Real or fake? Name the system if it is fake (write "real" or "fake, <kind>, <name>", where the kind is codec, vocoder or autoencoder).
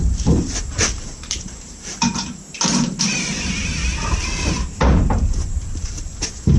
fake, vocoder, BigVGAN v2